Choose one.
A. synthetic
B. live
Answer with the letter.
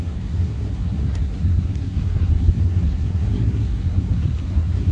A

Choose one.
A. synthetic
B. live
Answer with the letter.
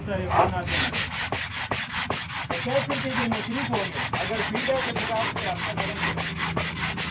B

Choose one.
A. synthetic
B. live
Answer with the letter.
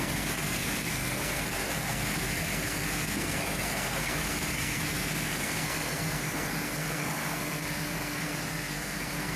A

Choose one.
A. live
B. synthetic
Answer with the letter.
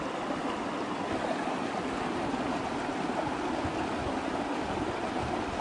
A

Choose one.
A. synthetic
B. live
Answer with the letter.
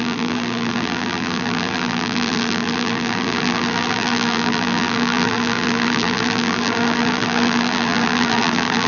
A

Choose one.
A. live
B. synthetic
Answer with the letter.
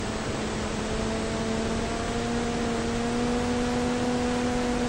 A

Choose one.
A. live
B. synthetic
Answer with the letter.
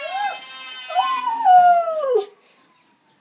A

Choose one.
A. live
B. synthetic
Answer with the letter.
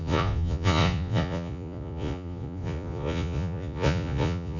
B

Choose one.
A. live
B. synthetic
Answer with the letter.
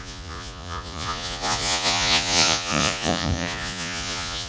B